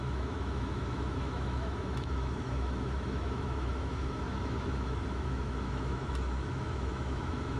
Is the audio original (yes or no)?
no